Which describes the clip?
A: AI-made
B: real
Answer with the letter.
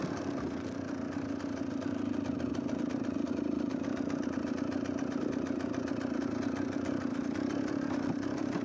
B